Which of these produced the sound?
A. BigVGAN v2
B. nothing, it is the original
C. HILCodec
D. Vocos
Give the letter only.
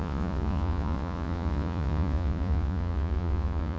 D